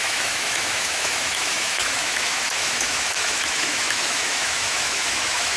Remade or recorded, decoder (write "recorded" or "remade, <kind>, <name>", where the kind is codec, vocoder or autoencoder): remade, autoencoder, DAC-VAE